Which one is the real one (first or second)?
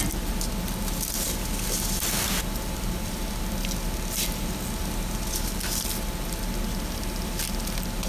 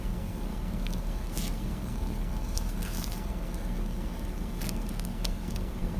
first